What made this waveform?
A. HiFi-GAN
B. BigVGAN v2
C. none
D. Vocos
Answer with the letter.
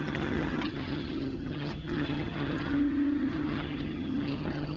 A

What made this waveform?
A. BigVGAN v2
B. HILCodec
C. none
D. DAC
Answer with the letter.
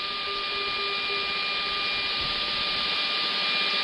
C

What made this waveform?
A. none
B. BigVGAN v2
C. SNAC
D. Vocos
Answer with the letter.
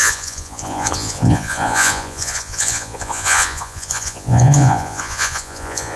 D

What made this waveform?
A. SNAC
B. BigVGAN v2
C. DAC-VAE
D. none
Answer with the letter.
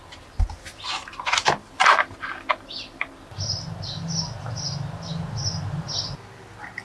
D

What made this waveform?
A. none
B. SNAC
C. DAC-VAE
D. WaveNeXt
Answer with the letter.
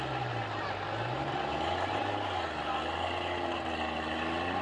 A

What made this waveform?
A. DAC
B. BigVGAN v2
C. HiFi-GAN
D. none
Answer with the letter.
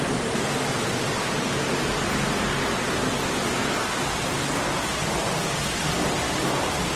D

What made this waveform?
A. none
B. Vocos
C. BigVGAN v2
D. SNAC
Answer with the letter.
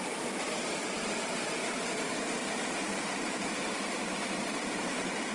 C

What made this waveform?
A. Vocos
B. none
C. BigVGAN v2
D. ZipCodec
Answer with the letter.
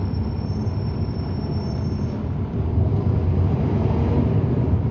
B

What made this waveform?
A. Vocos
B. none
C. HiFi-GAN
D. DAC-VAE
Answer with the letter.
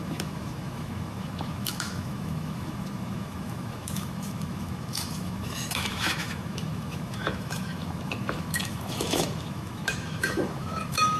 D